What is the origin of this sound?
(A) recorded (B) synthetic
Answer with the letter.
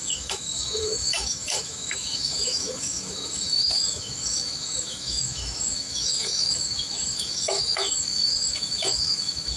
B